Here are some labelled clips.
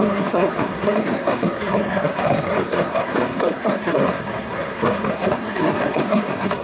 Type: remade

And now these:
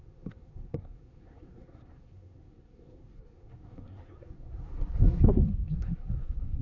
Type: remade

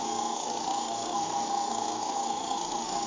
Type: remade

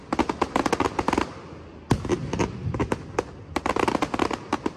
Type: recorded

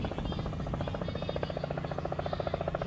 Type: recorded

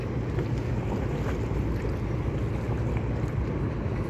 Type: recorded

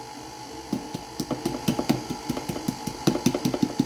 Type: recorded